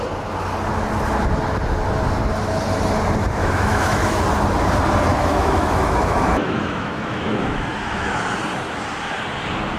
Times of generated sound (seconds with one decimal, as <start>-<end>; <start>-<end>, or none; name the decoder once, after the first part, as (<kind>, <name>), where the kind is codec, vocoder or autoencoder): 3.4-4.2 (autoencoder, DAC-VAE); 5.1-8.2